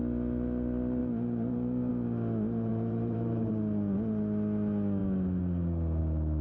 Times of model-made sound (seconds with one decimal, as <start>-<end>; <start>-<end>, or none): 2.7-3.5